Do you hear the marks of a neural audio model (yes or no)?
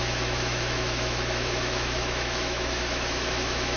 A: yes